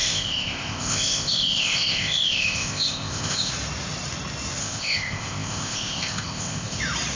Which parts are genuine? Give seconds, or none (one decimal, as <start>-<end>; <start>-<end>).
3.5-4.6; 6.8-7.2